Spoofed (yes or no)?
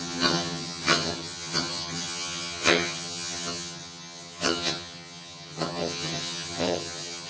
yes